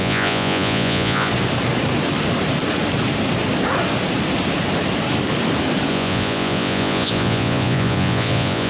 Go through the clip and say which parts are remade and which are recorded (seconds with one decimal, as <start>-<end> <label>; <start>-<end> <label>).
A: 0.0-1.3 remade; 1.3-5.9 recorded; 5.9-8.7 remade